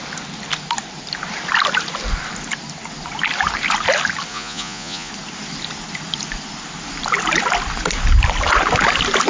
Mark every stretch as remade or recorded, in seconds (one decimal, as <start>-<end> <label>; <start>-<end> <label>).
0.0-4.3 recorded; 4.3-5.1 remade; 5.1-9.3 recorded